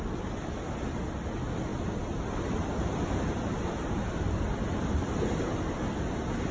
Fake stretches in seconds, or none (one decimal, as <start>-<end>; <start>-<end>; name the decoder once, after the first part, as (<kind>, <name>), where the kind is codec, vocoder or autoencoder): none